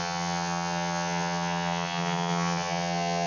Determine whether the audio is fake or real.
fake